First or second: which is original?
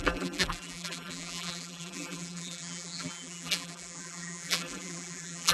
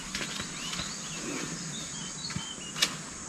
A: second